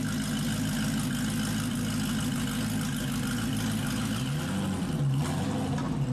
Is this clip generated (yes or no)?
no